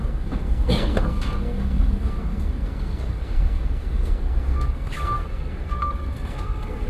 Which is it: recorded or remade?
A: remade